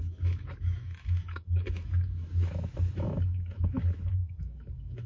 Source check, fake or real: fake